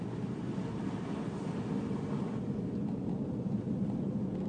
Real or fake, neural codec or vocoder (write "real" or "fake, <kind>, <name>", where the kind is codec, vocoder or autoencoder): real